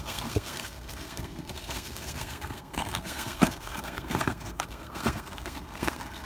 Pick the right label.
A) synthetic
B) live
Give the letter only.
A